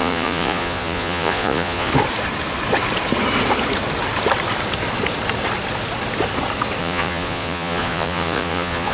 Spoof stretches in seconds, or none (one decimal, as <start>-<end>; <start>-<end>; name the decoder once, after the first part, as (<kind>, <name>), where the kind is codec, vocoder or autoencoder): 0.0-1.9 (vocoder, Vocos); 6.8-8.9